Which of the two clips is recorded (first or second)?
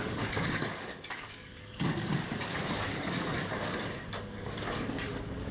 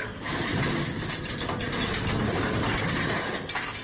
second